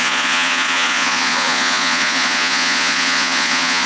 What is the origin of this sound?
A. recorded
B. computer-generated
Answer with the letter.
B